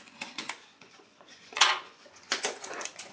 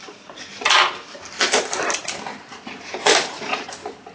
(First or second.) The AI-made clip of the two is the first